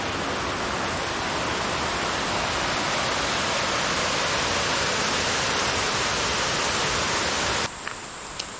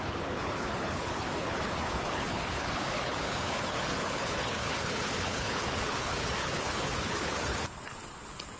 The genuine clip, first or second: first